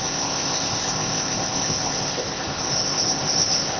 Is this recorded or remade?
remade